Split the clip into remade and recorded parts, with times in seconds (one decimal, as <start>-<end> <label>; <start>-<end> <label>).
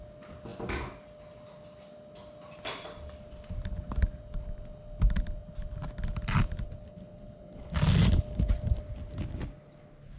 0.0-10.2 recorded